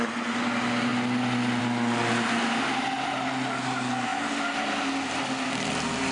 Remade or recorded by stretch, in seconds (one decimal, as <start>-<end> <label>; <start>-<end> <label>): 0.0-6.1 recorded